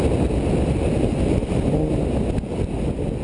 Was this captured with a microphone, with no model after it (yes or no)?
yes